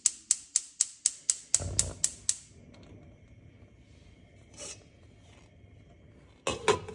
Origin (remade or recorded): recorded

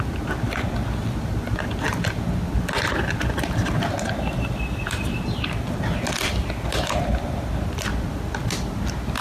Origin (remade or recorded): recorded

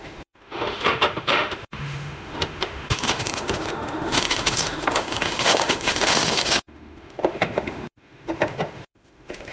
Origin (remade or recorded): remade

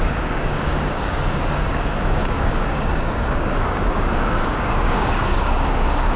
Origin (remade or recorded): remade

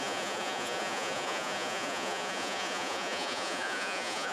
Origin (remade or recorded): remade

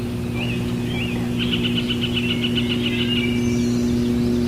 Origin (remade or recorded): recorded